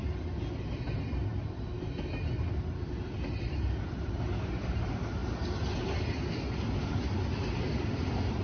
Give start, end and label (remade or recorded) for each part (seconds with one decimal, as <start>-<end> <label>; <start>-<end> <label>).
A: 0.0-8.4 recorded